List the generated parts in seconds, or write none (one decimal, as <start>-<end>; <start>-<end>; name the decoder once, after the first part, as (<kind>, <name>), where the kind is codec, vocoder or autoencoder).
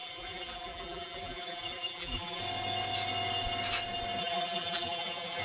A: 0.0-2.4 (vocoder, BigVGAN v2); 4.2-5.4